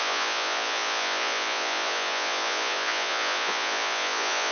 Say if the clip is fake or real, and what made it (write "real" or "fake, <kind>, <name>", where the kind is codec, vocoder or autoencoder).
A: fake, vocoder, Vocos